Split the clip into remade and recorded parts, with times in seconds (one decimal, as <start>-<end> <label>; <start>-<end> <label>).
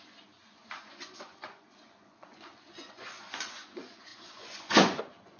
0.0-5.4 remade